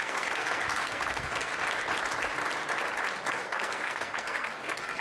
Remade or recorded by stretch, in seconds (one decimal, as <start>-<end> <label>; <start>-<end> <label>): 0.0-1.5 remade; 1.5-3.3 recorded; 3.3-5.0 remade